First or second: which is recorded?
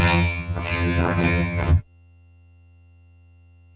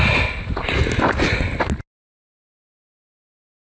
second